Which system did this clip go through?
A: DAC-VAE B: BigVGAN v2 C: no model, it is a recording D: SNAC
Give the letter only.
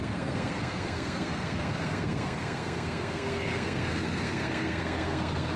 D